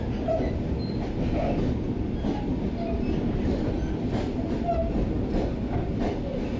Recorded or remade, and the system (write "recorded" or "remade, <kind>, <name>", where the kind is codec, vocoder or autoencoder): recorded